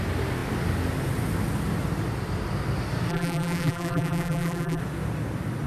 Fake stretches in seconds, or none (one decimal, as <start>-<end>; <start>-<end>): 3.1-4.8